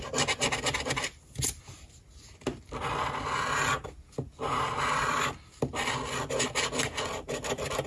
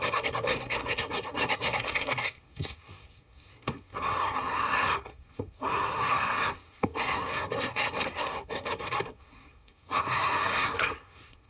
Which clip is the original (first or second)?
first